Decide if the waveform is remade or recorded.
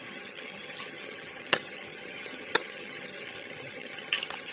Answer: remade